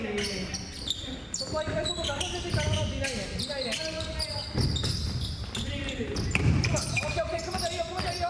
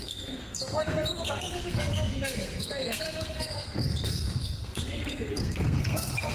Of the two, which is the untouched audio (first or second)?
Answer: first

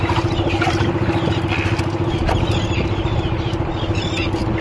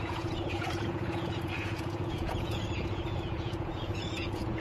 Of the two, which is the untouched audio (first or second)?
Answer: first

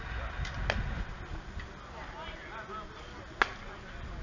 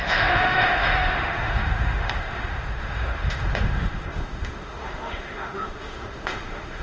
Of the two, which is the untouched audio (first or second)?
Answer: first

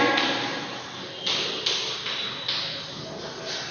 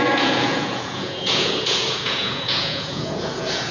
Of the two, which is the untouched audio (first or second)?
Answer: first